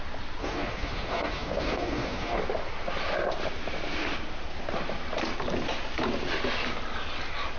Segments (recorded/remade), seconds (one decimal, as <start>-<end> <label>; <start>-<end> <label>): 0.0-0.4 recorded; 0.4-2.4 remade; 2.4-7.6 recorded